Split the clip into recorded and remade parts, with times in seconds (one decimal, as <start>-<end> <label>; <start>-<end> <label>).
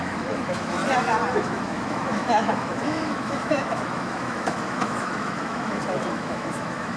0.0-0.8 remade; 0.8-1.3 recorded; 1.3-7.0 remade